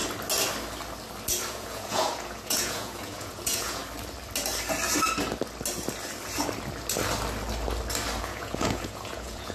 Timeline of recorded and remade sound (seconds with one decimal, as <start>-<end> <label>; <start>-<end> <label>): 0.0-1.5 recorded; 1.5-3.8 remade; 3.8-8.2 recorded; 8.2-9.5 remade